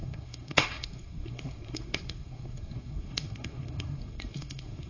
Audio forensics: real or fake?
fake